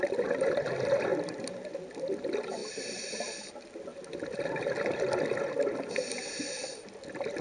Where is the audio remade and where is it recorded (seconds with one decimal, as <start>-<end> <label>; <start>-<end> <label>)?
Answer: 0.0-2.6 recorded; 2.6-3.5 remade; 3.5-7.4 recorded